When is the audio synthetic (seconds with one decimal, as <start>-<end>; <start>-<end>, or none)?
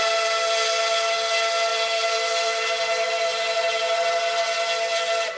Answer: none